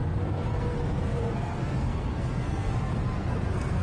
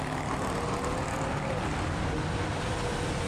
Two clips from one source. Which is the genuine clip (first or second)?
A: second